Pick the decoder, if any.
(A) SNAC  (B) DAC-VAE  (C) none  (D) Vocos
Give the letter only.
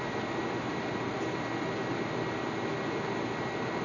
C